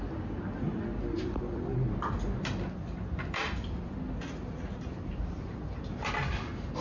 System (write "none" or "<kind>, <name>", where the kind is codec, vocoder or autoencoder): none